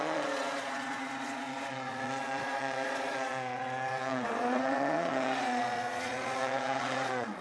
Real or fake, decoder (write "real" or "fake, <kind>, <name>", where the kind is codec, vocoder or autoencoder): fake, vocoder, Vocos